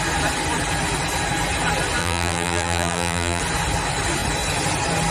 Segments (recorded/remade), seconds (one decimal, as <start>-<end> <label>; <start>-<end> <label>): 0.0-2.0 recorded; 2.0-3.4 remade; 3.4-5.1 recorded

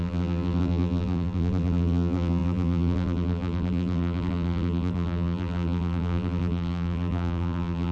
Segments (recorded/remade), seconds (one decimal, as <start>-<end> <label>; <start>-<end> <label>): 0.0-7.9 remade

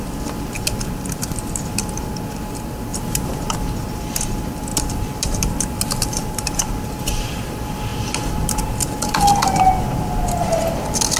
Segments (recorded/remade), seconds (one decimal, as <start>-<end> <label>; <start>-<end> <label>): 0.0-2.9 recorded; 2.9-3.5 remade; 3.5-4.7 recorded; 4.7-6.7 remade; 6.7-11.2 recorded

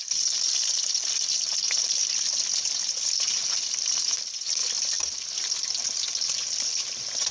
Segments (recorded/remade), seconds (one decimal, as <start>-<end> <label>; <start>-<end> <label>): 0.0-7.3 recorded

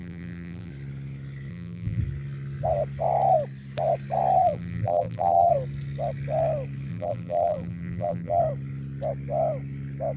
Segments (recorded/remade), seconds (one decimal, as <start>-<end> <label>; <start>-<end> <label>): 0.0-0.7 remade; 0.7-1.5 recorded; 1.5-2.0 remade; 2.0-4.4 recorded; 4.4-5.5 remade; 5.5-6.9 recorded; 6.9-8.4 remade; 8.4-10.2 recorded

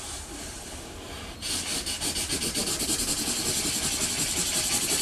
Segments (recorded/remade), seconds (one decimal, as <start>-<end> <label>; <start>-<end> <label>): 0.0-5.0 remade

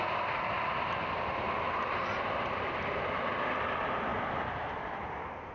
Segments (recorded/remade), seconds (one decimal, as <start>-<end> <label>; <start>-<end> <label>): 0.0-4.1 remade; 4.1-4.8 recorded; 4.8-5.5 remade